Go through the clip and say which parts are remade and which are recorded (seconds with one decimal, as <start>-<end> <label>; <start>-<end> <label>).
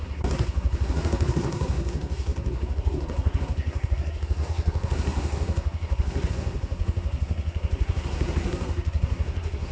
0.0-9.7 remade